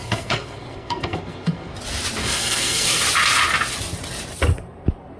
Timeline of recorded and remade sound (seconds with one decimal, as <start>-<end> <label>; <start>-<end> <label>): 0.0-1.7 remade; 1.7-2.2 recorded; 2.2-3.0 remade; 3.0-5.2 recorded